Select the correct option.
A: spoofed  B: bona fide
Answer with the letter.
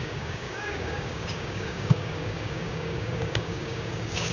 A